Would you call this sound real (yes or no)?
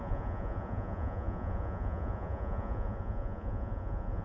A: no